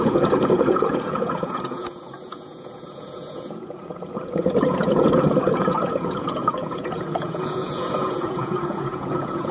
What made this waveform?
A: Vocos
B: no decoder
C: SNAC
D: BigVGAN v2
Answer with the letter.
A